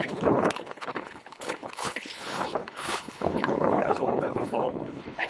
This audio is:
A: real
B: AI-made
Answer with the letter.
B